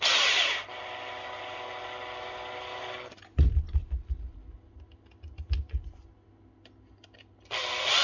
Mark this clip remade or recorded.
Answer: recorded